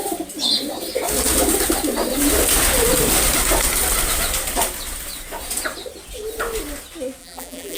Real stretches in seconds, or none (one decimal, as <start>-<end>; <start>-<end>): 0.0-7.2